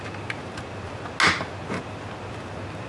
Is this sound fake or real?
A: real